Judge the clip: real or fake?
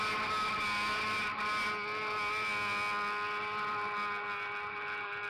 real